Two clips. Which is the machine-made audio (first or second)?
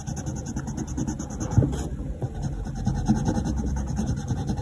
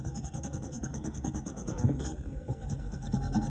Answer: second